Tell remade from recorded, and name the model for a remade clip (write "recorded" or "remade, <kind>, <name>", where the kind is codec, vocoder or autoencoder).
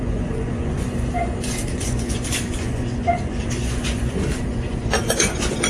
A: remade, vocoder, Vocos